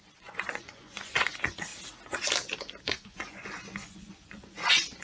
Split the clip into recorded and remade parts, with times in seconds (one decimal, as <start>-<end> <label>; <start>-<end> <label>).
0.0-1.7 remade; 1.7-2.8 recorded; 2.8-5.0 remade